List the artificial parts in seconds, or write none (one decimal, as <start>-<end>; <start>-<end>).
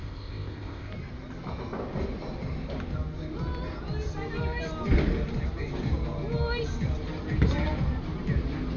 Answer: 0.0-0.9